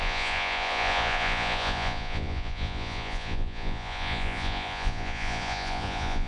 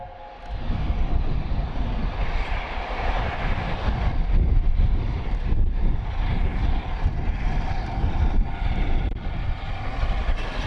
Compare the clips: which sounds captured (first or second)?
second